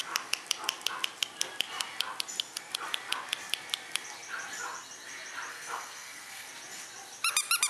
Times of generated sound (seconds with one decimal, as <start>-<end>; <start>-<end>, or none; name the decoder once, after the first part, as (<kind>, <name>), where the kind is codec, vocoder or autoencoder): 5.5-6.5 (codec, SNAC)